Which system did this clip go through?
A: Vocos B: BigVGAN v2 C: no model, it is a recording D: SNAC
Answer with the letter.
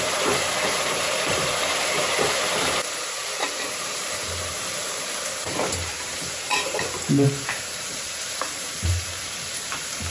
B